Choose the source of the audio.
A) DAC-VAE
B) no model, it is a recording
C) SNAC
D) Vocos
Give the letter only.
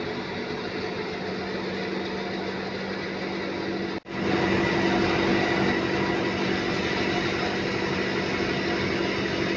B